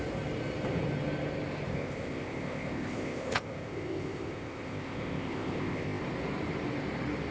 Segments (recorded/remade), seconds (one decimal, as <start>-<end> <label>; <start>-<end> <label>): 0.0-1.7 recorded; 1.7-6.0 remade; 6.0-7.3 recorded